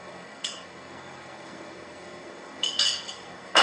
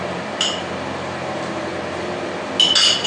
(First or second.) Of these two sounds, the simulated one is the first